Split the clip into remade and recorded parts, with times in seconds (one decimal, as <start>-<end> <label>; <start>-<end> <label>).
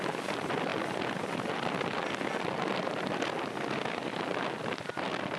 0.0-5.4 recorded